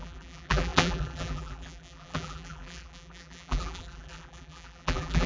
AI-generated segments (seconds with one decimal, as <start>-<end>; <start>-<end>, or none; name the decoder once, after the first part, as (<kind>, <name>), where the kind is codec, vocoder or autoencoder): 0.0-5.3 (vocoder, BigVGAN v2)